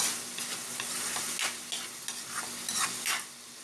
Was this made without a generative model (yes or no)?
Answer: yes